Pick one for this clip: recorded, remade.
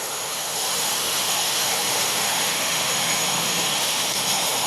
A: remade